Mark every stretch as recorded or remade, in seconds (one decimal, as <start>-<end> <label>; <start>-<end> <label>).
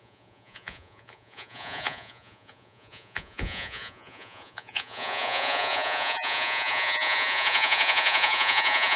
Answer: 0.0-9.0 remade